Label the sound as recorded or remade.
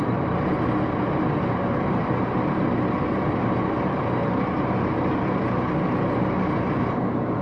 recorded